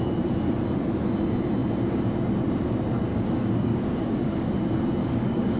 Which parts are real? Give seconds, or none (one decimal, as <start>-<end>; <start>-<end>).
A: 0.0-3.1; 4.5-5.0